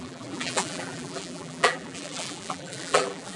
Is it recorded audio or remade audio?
remade